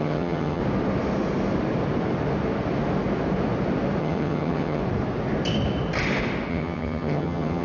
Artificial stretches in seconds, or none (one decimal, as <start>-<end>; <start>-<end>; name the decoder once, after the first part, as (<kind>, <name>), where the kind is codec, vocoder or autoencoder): 0.0-0.6 (vocoder, HiFi-GAN); 4.0-4.8; 6.5-7.6